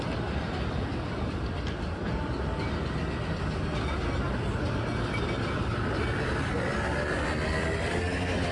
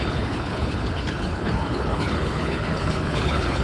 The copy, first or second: second